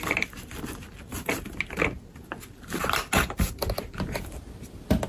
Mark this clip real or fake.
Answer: real